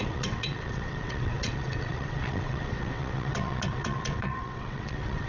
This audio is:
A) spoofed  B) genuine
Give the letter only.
A